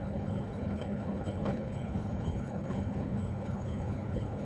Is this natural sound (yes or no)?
no